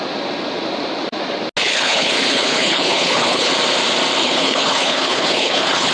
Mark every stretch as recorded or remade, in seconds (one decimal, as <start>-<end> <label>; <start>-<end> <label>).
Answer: 0.0-1.6 recorded; 1.6-3.5 remade; 3.5-4.2 recorded; 4.2-5.9 remade